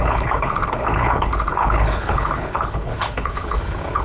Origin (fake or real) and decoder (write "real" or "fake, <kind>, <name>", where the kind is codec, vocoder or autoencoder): fake, codec, HILCodec